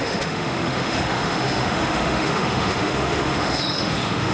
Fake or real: fake